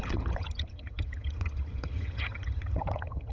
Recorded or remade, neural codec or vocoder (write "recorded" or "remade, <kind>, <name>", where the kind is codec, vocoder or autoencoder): remade, vocoder, HiFi-GAN